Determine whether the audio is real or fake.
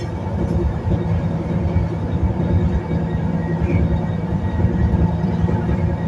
real